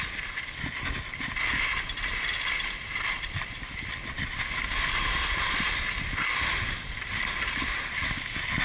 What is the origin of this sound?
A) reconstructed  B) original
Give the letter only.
B